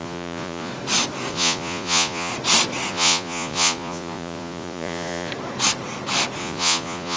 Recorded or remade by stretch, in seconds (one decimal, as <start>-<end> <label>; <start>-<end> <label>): 0.0-0.7 remade; 0.7-1.3 recorded; 1.3-2.3 remade; 2.3-2.9 recorded; 2.9-5.3 remade; 5.3-6.4 recorded; 6.4-7.2 remade